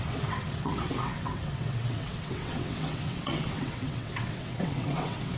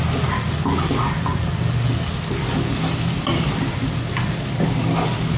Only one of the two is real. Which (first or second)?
second